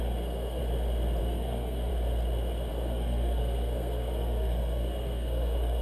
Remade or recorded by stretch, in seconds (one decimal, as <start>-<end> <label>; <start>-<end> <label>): 0.0-0.6 remade; 0.6-1.2 recorded; 1.2-1.9 remade; 1.9-2.7 recorded; 2.7-5.8 remade